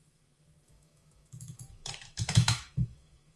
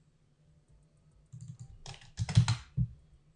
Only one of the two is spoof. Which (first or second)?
first